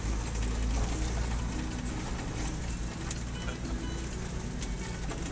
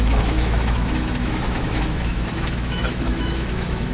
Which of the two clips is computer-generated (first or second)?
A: second